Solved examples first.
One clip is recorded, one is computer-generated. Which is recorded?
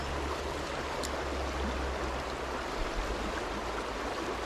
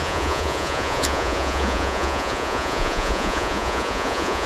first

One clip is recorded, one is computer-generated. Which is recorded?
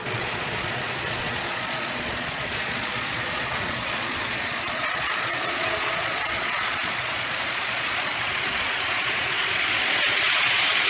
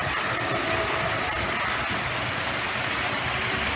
second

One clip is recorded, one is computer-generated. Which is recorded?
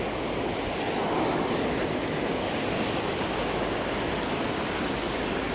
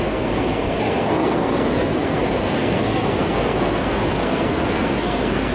first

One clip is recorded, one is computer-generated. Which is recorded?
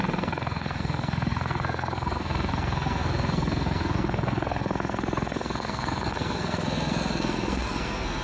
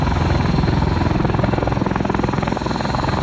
second